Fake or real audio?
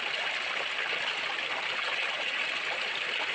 real